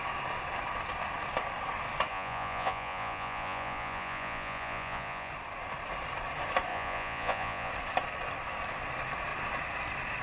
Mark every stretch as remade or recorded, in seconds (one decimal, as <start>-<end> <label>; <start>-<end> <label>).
0.0-2.1 recorded; 2.1-5.3 remade; 5.3-6.7 recorded; 6.7-7.7 remade; 7.7-10.2 recorded